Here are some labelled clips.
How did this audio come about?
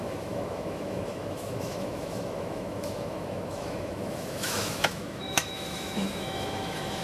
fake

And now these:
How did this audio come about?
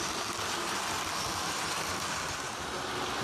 real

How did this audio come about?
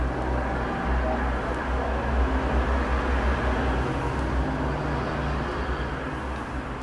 real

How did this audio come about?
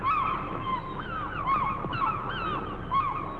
real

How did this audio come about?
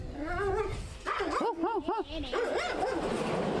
real